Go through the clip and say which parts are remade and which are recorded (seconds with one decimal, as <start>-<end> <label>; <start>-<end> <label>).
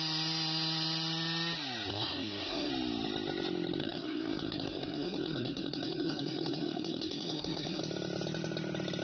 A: 0.0-1.9 recorded; 1.9-2.7 remade; 2.7-3.8 recorded; 3.8-7.8 remade; 7.8-9.0 recorded